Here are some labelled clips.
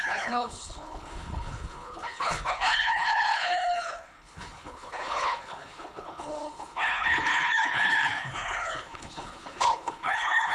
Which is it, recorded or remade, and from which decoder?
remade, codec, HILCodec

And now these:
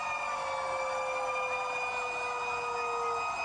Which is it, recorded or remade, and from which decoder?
recorded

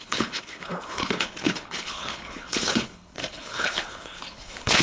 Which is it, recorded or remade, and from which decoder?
remade, codec, HILCodec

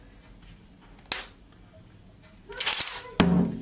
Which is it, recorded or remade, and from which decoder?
recorded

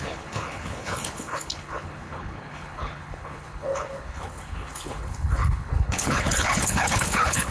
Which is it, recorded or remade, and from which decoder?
remade, codec, HILCodec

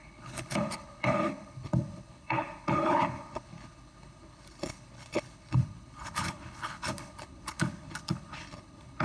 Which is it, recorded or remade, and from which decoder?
remade, codec, HILCodec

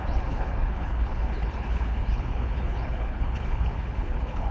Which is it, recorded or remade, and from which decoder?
remade, codec, HILCodec